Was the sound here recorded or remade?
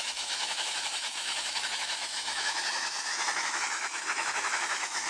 remade